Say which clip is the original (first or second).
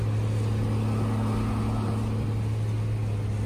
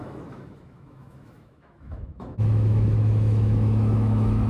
first